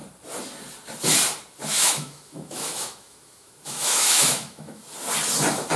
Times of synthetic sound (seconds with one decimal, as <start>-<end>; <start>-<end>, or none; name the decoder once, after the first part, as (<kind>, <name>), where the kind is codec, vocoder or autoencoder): 1.7-4.8 (autoencoder, DAC-VAE)